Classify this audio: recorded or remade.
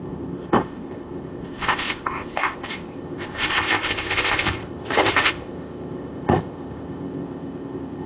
remade